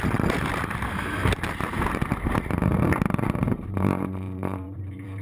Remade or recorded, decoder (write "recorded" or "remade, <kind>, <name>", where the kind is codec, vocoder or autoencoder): remade, vocoder, BigVGAN v2